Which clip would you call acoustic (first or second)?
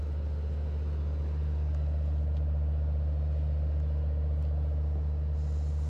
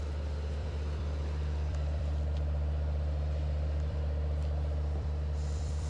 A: first